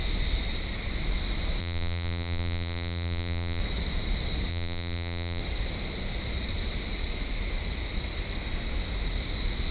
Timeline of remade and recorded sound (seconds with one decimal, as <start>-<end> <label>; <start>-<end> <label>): 0.0-1.6 recorded; 1.6-3.6 remade; 3.6-4.5 recorded; 4.5-5.4 remade; 5.4-9.7 recorded